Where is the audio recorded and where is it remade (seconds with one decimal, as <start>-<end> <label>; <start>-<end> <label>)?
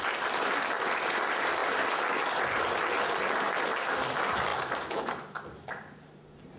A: 0.0-6.6 recorded